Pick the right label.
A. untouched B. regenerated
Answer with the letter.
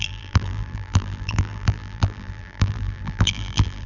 B